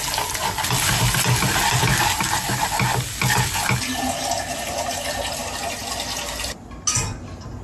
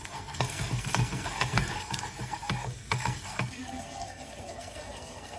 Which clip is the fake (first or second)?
second